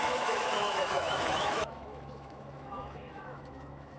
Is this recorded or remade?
remade